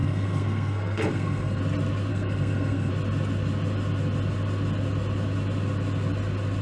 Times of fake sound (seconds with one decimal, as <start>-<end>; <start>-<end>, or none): 0.0-1.6; 2.1-2.9